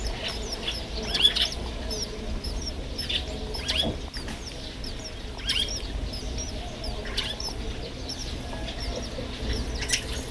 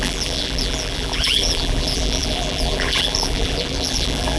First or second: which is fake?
second